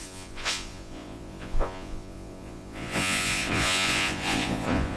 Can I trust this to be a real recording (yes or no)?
no